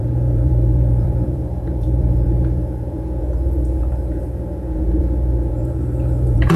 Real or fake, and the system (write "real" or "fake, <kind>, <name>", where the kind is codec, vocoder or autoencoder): fake, vocoder, Vocos